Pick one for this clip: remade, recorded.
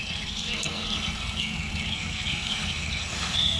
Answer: remade